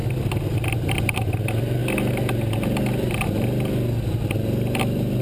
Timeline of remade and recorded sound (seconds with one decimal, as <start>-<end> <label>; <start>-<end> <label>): 0.0-5.2 recorded